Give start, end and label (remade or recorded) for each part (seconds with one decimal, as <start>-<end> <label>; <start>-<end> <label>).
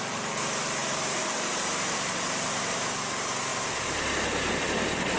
0.0-3.5 remade; 3.5-4.5 recorded; 4.5-5.2 remade